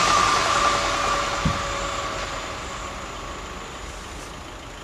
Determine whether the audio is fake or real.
real